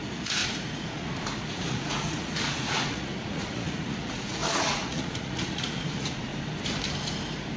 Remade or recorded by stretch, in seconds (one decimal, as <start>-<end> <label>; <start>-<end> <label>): 0.0-6.3 remade; 6.3-7.6 recorded